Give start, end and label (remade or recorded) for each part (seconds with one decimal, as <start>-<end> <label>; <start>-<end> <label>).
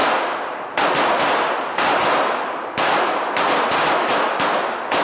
0.0-5.0 recorded